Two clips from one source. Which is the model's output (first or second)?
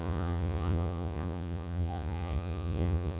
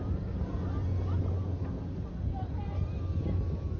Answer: first